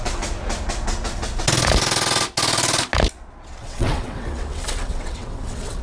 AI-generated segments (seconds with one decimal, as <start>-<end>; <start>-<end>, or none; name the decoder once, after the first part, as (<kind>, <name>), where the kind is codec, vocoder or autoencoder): 3.6-5.8 (vocoder, WaveNeXt)

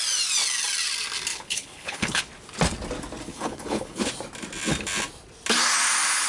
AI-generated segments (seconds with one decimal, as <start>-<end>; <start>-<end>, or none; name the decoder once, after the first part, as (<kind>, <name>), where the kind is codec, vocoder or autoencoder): 1.3-2.2 (codec, HILCodec); 3.3-4.1

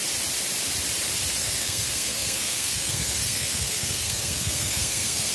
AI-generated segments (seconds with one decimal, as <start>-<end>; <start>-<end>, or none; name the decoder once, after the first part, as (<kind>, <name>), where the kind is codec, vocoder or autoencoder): 1.4-5.3 (codec, SNAC)